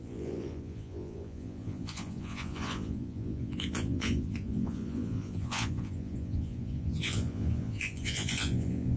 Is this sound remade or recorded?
remade